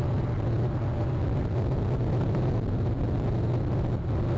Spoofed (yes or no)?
no